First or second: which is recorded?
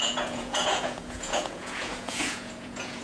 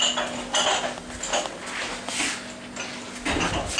second